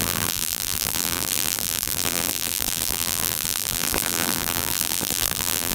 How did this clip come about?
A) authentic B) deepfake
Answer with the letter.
B